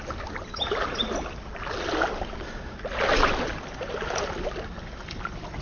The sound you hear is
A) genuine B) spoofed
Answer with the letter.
A